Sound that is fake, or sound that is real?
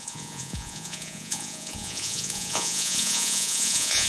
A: fake